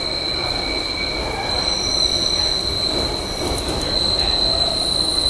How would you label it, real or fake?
real